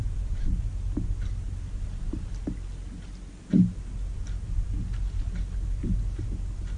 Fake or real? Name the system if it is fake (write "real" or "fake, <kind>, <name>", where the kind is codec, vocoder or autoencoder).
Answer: real